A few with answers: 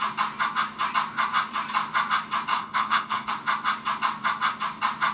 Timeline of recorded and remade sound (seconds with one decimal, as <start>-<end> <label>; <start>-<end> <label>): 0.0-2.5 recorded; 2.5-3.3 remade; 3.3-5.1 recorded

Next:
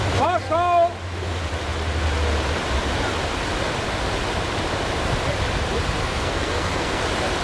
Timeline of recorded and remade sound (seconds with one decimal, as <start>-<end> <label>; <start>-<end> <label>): 0.0-6.0 recorded; 6.0-7.0 remade; 7.0-7.4 recorded

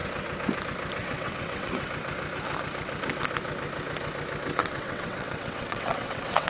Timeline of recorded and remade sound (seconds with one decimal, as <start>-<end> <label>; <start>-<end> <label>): 0.0-1.0 recorded; 1.0-1.7 remade; 1.7-4.6 recorded; 4.6-6.5 remade

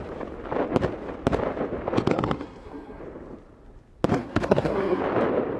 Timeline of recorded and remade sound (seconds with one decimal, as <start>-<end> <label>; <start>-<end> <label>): 0.0-2.1 recorded; 2.1-3.0 remade; 3.0-4.1 recorded; 4.1-5.0 remade; 5.0-5.6 recorded

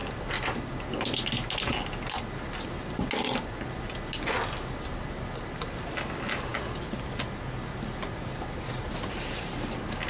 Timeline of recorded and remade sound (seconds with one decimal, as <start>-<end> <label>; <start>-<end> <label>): 0.0-10.1 recorded